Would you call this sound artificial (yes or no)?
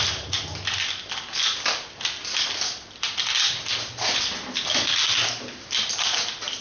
no